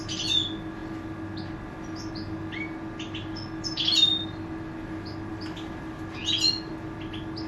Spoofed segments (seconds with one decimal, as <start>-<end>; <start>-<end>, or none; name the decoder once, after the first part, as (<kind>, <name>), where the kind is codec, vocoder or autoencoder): none